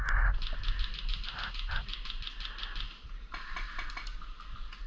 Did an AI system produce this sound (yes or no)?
no